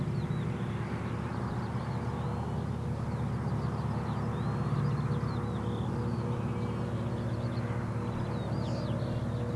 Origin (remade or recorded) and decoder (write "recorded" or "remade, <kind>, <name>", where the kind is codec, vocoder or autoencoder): recorded